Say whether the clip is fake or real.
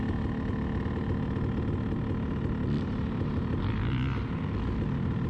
real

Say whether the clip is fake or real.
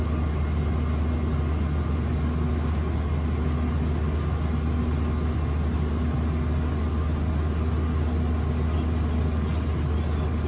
real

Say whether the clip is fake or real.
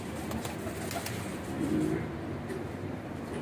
real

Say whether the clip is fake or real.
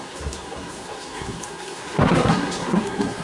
fake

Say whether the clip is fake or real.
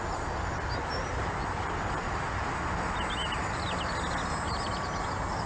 real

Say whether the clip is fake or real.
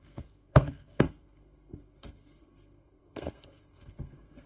fake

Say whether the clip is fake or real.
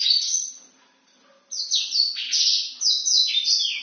real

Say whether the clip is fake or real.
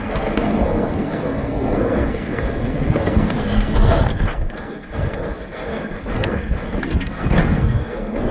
fake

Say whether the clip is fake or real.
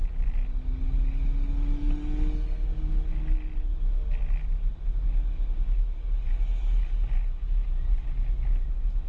real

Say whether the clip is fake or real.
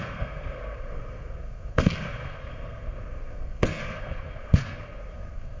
fake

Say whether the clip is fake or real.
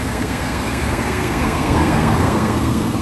fake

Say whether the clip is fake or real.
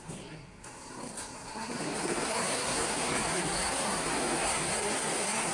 fake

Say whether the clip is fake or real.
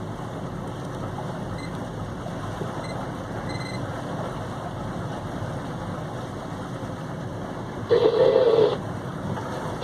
real